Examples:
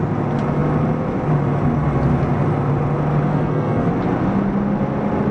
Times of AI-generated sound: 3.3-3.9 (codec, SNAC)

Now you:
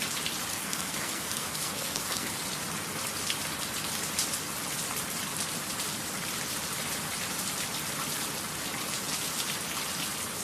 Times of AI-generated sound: 0.5-2.4 (codec, SNAC)

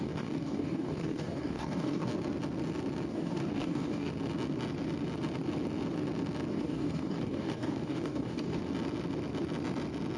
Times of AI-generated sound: 0.0-2.1 (codec, DAC); 3.1-4.1; 6.5-8.6